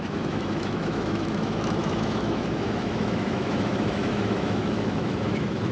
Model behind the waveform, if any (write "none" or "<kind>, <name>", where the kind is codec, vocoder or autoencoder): autoencoder, DAC-VAE